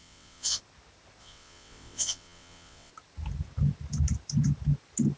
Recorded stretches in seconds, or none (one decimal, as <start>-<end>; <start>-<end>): 0.6-1.2; 2.9-5.2